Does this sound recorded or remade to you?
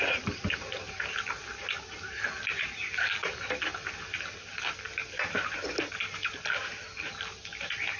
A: recorded